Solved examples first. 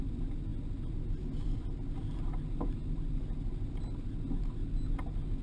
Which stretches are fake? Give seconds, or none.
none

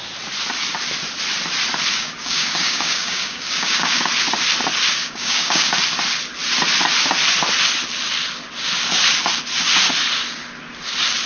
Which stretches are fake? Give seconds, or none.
1.9-4.1 (codec, DAC); 5.0-5.7

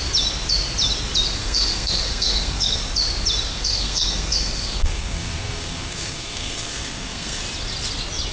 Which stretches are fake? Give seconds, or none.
1.4-2.8 (codec, SNAC); 3.5-7.4

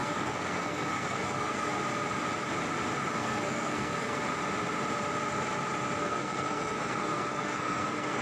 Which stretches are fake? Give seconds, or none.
0.0-1.7 (codec, SNAC); 3.2-4.2; 6.0-8.2

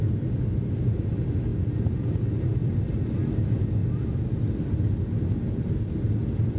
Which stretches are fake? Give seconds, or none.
none

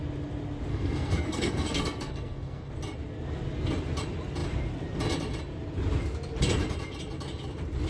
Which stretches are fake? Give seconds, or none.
0.7-2.7 (codec, SNAC)

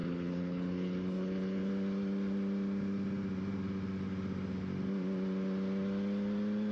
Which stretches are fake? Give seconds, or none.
0.0-1.7 (codec, HILCodec)